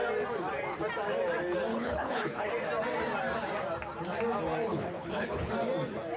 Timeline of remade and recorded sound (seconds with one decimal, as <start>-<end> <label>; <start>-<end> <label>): 0.0-1.7 recorded; 1.7-2.5 remade; 2.5-4.7 recorded; 4.7-5.5 remade; 5.5-6.2 recorded